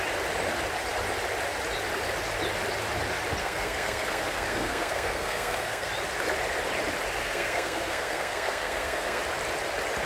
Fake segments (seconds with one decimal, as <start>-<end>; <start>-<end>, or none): 3.4-5.9; 7.2-9.2